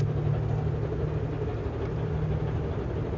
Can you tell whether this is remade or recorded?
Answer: recorded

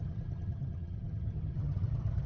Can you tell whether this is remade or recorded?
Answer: remade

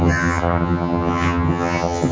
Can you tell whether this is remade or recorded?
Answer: remade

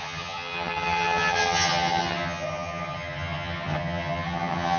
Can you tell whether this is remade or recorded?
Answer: remade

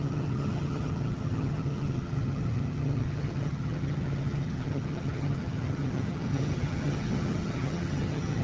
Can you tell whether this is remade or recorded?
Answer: remade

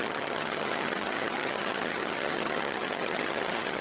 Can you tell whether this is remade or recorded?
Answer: remade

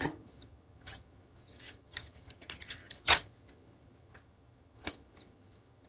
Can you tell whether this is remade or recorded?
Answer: remade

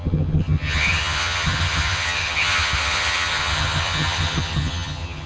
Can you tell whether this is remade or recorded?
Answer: remade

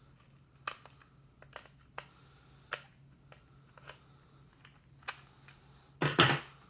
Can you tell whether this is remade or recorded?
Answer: recorded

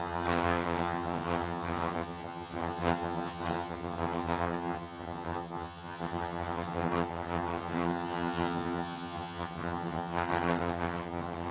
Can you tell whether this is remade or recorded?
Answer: remade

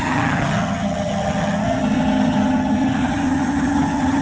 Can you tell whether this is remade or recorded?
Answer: remade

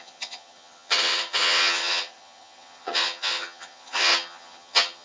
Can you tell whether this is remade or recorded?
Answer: remade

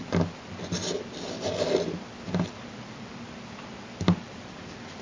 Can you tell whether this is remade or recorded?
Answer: recorded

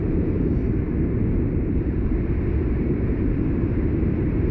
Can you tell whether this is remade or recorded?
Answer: recorded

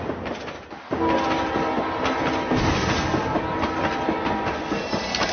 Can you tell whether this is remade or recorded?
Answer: recorded